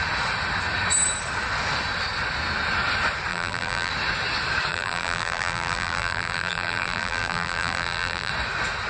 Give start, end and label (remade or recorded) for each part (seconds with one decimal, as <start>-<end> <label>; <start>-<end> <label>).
0.0-3.3 recorded; 3.3-3.9 remade; 3.9-4.7 recorded; 4.7-8.3 remade; 8.3-8.9 recorded